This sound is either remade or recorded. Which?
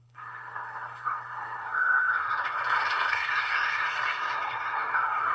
remade